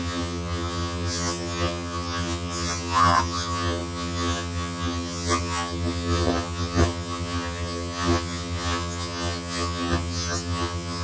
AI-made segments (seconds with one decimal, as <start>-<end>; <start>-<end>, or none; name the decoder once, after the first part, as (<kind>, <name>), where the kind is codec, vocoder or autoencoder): 0.0-11.0 (vocoder, HiFi-GAN)